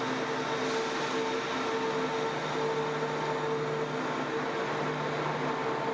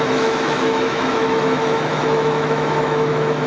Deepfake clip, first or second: second